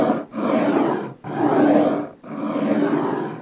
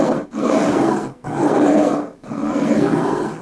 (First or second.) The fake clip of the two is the second